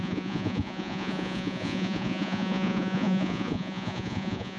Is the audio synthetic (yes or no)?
yes